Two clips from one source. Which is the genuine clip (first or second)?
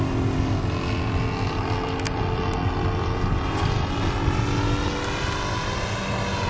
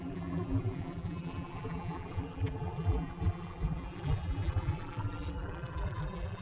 first